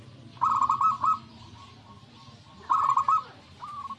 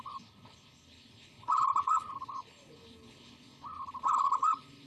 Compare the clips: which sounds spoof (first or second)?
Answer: second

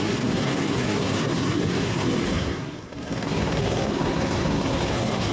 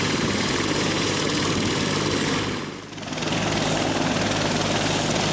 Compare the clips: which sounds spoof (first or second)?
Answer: first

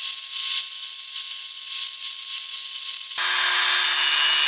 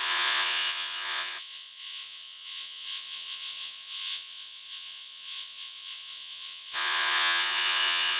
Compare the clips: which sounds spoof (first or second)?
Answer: second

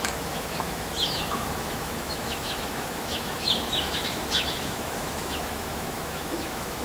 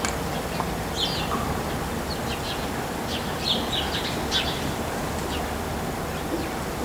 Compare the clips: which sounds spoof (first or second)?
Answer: first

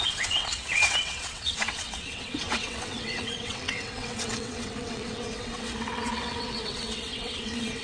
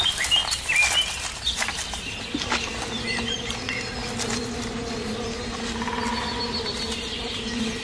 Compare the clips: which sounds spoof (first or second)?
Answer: first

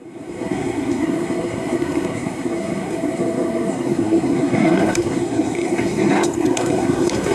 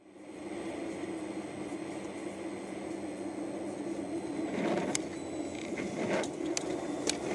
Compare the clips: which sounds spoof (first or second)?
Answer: first